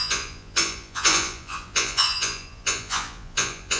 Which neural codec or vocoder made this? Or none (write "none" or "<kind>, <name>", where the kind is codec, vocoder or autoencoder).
vocoder, Vocos